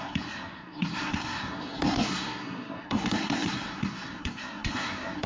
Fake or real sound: fake